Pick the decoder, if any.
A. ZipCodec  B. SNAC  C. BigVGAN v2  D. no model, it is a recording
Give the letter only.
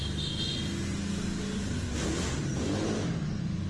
D